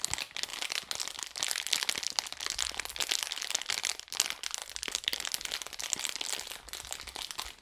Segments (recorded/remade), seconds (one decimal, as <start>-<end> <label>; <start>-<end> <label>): 0.0-4.6 recorded; 4.6-6.4 remade; 6.4-7.6 recorded